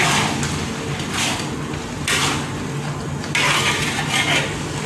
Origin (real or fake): real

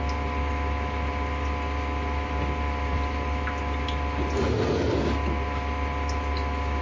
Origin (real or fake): real